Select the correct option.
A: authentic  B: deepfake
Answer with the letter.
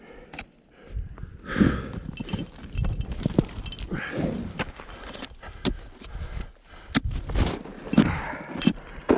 A